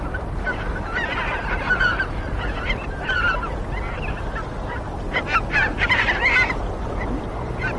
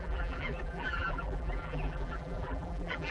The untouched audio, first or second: first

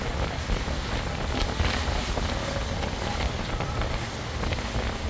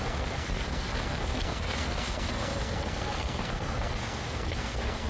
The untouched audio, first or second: first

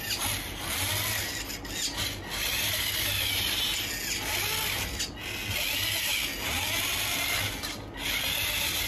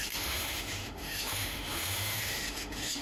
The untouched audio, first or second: first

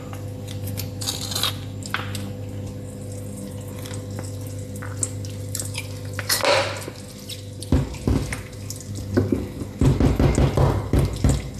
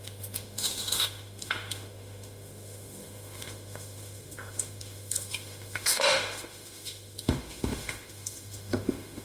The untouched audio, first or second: first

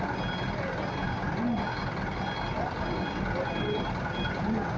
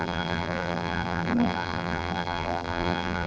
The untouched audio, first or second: first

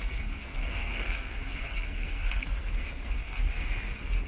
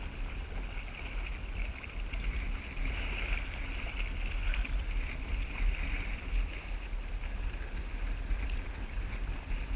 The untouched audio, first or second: second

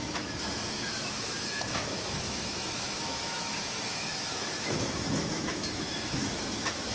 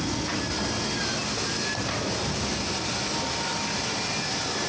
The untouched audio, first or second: second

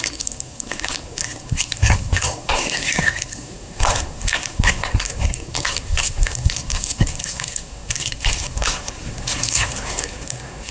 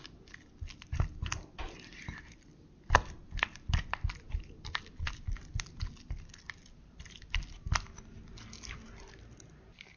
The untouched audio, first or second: second